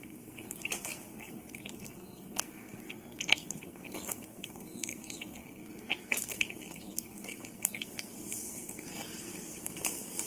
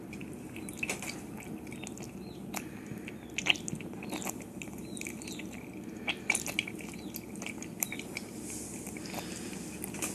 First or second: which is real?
second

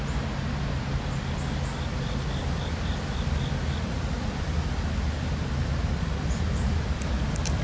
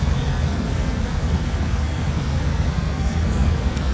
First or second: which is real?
first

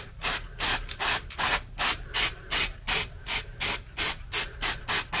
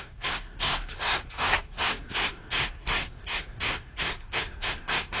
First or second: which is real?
first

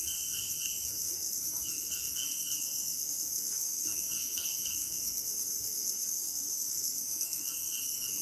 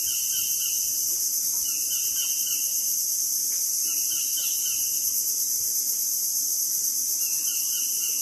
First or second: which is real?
second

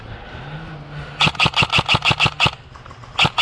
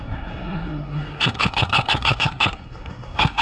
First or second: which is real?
first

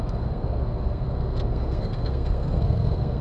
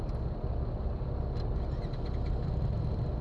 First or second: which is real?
second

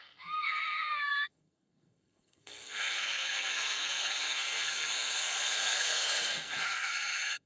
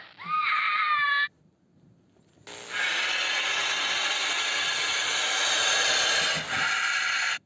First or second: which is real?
second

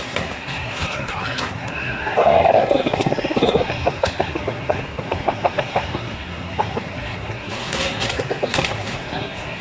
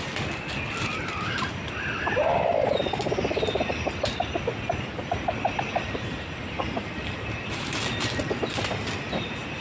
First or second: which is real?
second